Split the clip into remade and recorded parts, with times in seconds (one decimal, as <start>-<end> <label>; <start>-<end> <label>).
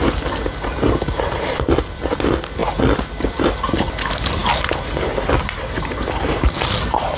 0.0-7.2 recorded